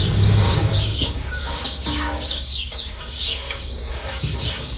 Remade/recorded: remade